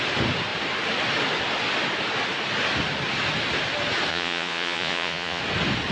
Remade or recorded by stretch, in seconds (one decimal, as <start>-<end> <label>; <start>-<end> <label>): 0.0-4.1 recorded; 4.1-5.4 remade; 5.4-5.9 recorded